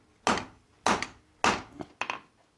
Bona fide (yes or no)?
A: yes